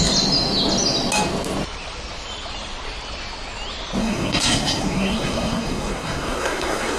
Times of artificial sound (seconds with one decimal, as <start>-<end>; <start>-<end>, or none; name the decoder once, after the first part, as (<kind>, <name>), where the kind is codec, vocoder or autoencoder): 4.0-7.0 (codec, SNAC)